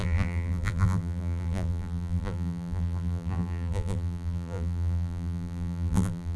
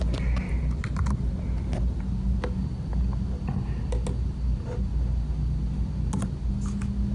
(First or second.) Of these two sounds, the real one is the second